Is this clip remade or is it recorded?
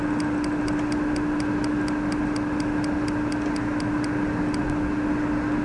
recorded